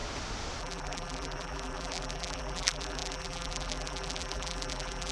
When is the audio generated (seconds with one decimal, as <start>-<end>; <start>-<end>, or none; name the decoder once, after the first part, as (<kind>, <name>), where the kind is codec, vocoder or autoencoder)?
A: 0.6-5.1 (vocoder, BigVGAN v2)